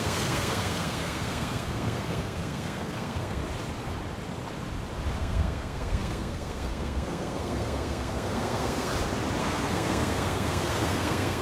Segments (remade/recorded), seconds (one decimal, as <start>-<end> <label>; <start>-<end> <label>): 0.0-3.4 remade; 3.4-5.2 recorded; 5.2-8.9 remade; 8.9-9.4 recorded; 9.4-11.4 remade